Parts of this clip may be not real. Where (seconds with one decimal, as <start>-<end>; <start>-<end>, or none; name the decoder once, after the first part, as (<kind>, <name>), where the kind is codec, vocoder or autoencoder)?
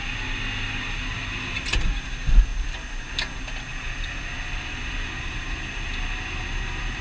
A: none